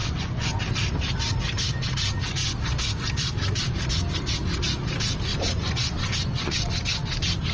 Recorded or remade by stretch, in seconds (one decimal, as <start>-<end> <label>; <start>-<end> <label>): 0.0-0.6 remade; 0.6-5.3 recorded; 5.3-6.7 remade; 6.7-7.5 recorded